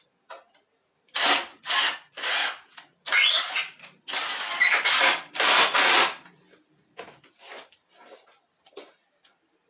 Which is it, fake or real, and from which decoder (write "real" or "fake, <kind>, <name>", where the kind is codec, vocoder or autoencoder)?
real